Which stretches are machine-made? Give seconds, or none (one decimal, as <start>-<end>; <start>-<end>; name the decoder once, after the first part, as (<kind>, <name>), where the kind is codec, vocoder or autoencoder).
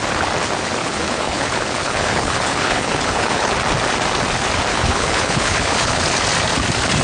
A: 0.8-3.5 (codec, HILCodec); 4.7-6.0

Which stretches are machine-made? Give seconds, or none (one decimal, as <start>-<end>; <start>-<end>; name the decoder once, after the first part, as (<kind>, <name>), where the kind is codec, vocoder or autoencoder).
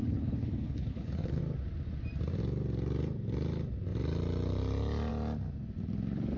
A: 0.0-1.4 (codec, HILCodec)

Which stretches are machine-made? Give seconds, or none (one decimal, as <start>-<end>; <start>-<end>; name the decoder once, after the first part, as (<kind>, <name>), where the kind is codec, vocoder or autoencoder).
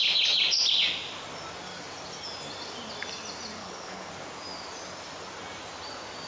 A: 3.6-4.1 (codec, HILCodec)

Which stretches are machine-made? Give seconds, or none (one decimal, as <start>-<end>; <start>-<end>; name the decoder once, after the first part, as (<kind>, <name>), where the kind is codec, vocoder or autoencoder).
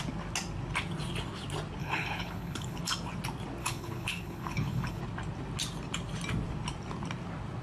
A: 1.8-2.8 (codec, HILCodec); 3.6-5.0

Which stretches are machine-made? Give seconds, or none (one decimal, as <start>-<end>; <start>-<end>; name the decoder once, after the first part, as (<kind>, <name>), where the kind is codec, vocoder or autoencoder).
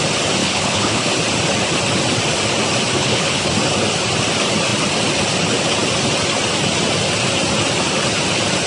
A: 0.4-1.1 (codec, HILCodec); 3.0-3.5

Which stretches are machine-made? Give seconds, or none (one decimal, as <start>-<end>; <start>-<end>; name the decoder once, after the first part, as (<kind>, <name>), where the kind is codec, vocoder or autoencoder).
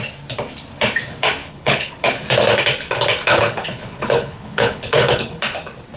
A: 1.4-1.9 (codec, HILCodec); 3.3-5.4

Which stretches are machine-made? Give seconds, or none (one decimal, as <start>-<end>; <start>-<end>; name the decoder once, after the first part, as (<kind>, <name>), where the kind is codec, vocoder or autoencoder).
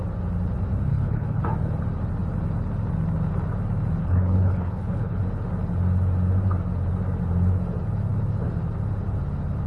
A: 0.9-1.4 (codec, HILCodec); 4.0-5.2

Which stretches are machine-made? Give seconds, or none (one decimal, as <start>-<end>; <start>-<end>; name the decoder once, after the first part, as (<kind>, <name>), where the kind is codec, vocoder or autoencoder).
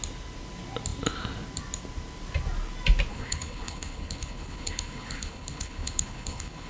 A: 3.1-6.7 (codec, HILCodec)